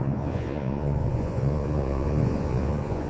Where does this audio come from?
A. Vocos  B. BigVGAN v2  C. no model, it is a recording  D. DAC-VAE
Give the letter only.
A